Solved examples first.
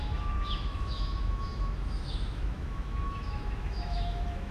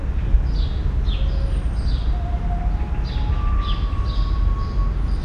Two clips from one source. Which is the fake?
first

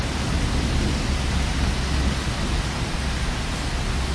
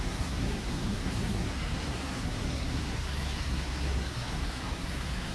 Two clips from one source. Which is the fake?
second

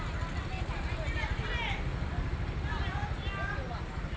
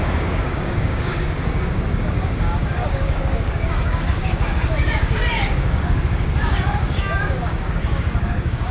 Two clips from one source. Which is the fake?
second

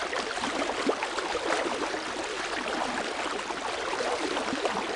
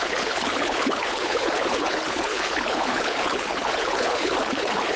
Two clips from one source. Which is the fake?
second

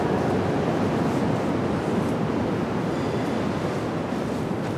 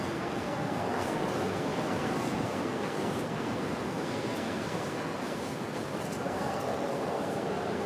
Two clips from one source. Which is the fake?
second